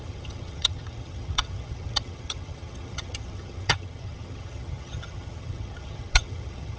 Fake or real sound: fake